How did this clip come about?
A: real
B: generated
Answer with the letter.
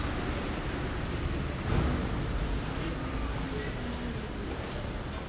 A